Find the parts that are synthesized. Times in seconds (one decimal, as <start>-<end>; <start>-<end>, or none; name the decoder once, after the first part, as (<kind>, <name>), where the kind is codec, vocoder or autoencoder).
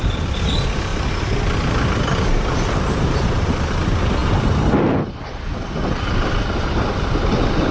none